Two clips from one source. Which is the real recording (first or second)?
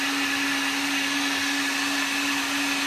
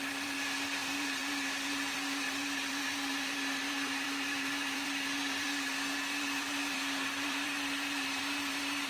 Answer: first